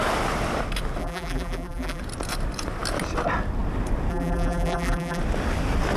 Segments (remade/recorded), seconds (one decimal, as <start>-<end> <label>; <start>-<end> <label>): 0.0-1.0 recorded; 1.0-2.0 remade; 2.0-4.1 recorded; 4.1-5.2 remade; 5.2-6.0 recorded